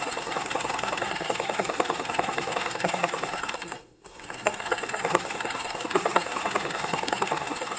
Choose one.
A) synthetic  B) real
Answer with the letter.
A